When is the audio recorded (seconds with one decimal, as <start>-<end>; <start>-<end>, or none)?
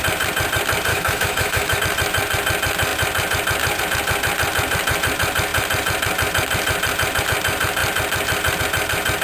0.0-0.9; 1.8-9.2